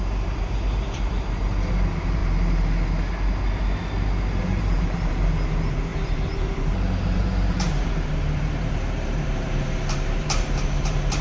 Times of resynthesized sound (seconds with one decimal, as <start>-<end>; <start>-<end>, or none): 0.0-2.2; 4.4-11.2